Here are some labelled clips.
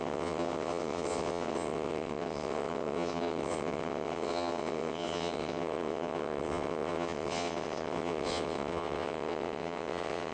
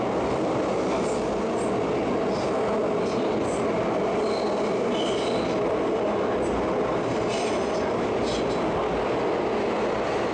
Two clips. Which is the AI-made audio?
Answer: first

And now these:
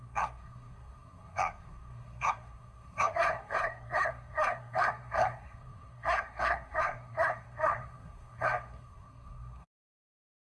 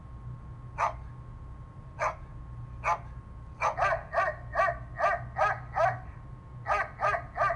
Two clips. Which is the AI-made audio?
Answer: first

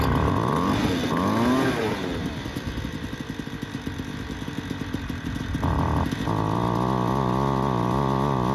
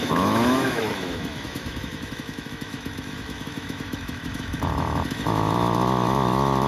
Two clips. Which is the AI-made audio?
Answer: second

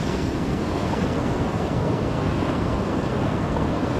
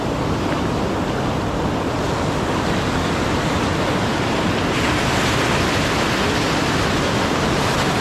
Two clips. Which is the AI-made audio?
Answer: first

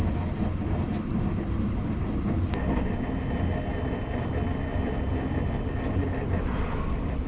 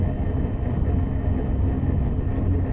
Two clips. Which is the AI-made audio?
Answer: first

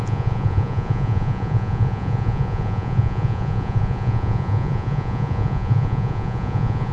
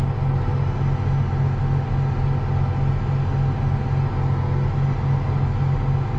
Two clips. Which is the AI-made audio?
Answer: first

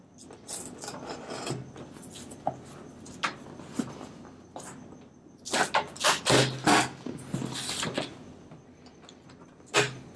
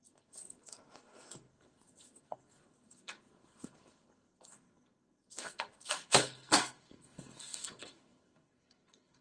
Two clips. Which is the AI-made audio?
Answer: second